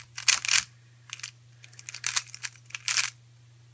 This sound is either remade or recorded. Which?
recorded